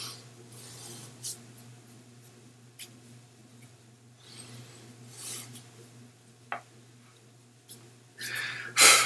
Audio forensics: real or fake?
real